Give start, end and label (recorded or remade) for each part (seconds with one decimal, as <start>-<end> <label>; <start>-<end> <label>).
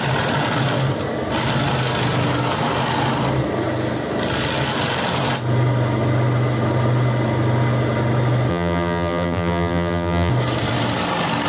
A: 0.0-8.5 recorded; 8.5-10.3 remade; 10.3-11.5 recorded